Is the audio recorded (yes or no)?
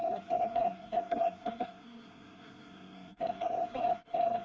no